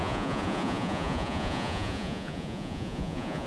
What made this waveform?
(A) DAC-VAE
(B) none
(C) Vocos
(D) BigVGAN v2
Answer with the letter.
C